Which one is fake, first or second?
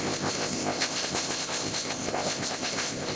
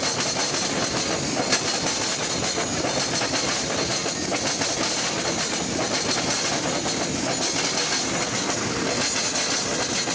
first